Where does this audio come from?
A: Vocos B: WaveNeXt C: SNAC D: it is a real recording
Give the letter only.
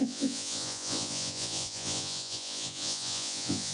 A